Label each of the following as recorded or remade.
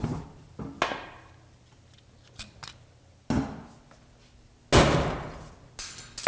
recorded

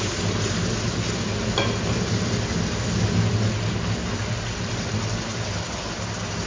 recorded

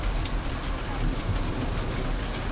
recorded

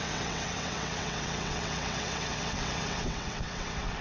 remade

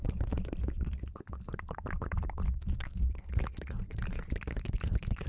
remade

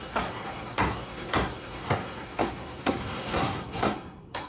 remade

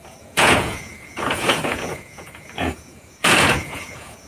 remade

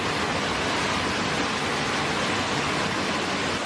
recorded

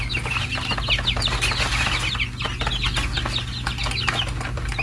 recorded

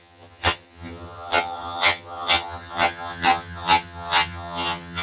remade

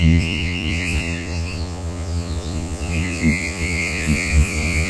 remade